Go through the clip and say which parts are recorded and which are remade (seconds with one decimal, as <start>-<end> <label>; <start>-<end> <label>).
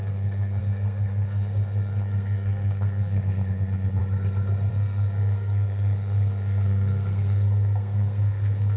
0.0-4.0 remade; 4.0-4.7 recorded; 4.7-8.8 remade